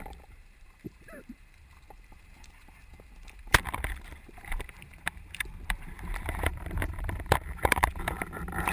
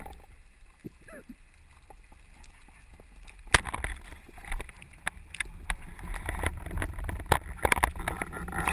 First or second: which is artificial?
first